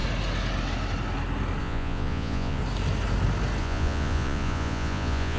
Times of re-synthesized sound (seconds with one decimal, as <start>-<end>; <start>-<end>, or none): 1.6-2.6; 3.6-5.4